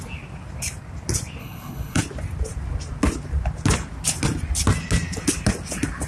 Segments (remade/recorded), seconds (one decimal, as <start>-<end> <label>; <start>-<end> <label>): 0.0-1.4 recorded; 1.4-2.0 remade; 2.0-6.1 recorded